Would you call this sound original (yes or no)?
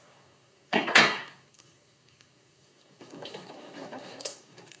no